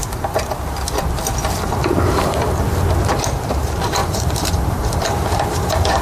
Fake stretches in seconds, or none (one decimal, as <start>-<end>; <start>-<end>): 3.6-6.0